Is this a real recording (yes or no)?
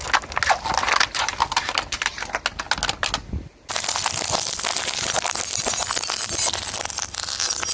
yes